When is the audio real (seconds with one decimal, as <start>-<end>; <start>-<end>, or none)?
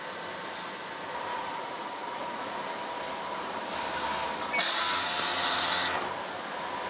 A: 0.0-1.3; 2.6-6.9